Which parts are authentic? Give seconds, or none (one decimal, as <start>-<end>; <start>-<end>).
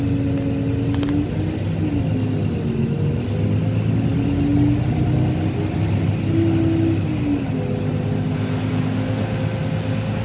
0.0-10.2